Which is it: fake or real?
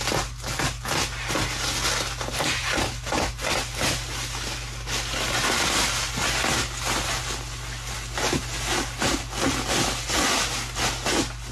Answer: real